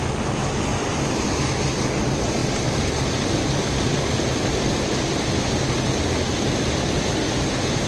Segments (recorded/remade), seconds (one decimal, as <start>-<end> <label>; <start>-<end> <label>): 0.0-7.9 recorded